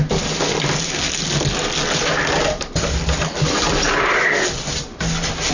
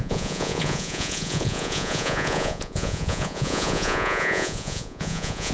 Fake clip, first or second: second